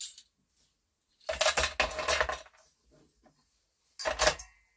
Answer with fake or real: real